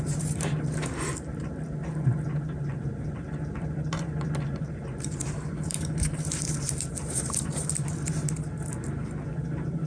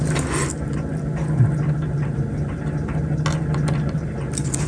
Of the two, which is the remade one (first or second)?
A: first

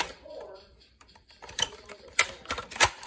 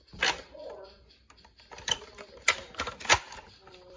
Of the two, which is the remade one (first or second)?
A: first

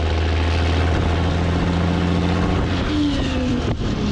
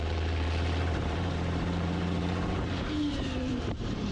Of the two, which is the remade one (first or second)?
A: second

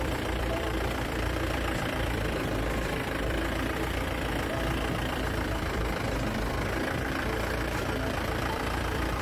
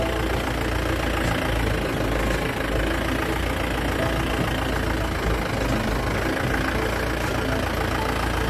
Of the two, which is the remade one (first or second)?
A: first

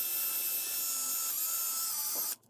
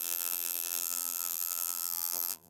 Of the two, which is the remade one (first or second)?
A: second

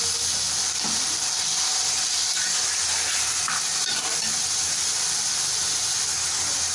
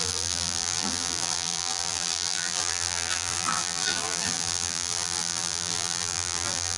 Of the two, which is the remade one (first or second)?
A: second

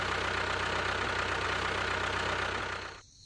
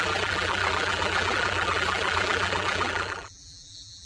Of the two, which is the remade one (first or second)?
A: second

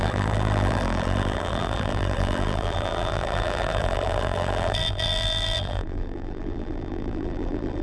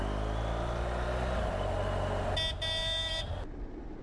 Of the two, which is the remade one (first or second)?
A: first